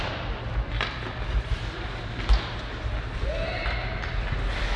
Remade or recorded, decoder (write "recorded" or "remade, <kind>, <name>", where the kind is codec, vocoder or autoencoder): recorded